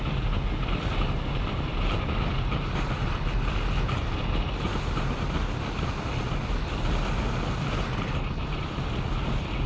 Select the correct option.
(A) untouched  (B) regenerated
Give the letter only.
A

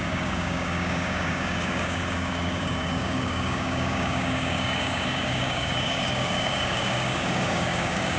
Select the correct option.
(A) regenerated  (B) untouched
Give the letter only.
A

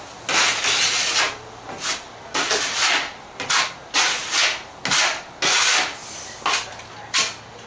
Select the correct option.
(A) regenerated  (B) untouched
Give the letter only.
B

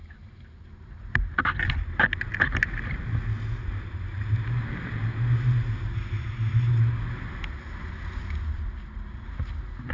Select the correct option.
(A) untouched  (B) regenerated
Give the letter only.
A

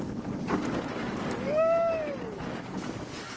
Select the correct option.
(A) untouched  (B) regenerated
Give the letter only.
B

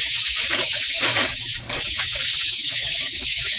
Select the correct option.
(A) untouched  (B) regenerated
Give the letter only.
B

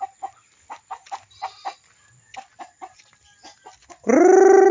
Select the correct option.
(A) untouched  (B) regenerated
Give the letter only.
A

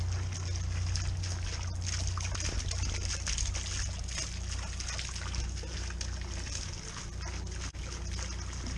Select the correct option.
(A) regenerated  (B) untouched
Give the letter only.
B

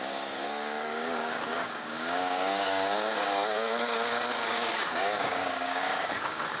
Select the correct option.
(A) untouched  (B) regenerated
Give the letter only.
B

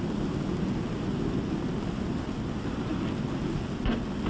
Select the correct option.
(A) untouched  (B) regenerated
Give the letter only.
A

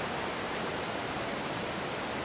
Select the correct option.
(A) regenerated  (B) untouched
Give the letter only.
B